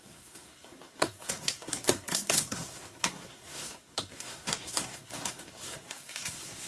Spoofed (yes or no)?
yes